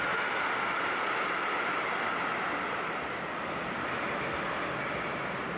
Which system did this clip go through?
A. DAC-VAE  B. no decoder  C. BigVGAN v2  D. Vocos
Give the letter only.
B